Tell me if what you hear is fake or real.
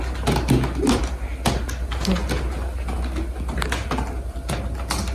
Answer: real